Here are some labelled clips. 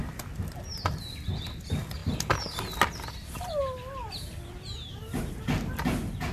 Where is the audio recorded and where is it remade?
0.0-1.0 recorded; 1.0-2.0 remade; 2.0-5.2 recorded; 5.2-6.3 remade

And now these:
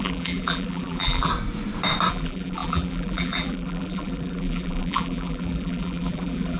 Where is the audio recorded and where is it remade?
0.0-1.3 remade; 1.3-2.1 recorded; 2.1-6.6 remade

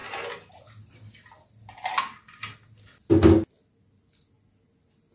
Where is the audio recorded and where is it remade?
0.0-5.1 recorded

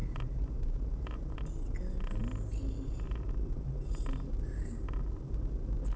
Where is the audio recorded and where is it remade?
0.0-1.4 remade; 1.4-6.0 recorded

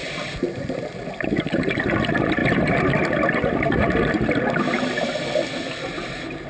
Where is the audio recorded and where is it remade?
0.0-6.5 recorded

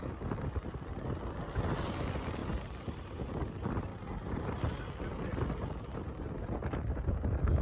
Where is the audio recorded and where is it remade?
0.0-2.4 recorded; 2.4-3.2 remade; 3.2-3.9 recorded; 3.9-4.6 remade; 4.6-7.6 recorded

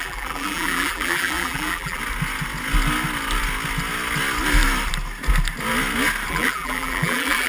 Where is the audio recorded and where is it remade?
0.0-2.0 remade; 2.0-6.3 recorded; 6.3-7.5 remade